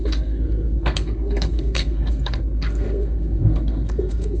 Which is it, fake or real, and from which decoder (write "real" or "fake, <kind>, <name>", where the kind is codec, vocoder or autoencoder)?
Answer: fake, codec, SNAC